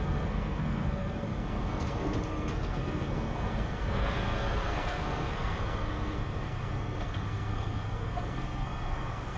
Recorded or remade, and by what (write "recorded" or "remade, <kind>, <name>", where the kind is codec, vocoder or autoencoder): remade, codec, SNAC